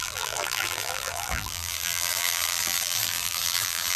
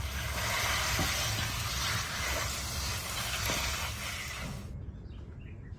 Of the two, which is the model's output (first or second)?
first